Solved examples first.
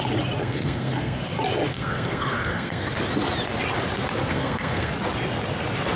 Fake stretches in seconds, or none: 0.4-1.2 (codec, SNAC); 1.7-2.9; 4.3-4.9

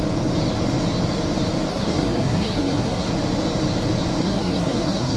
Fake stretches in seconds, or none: 1.7-3.1 (codec, SNAC); 4.2-5.2